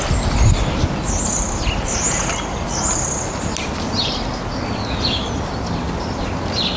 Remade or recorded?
recorded